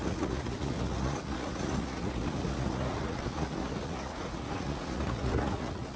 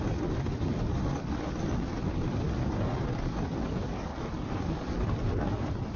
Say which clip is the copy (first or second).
first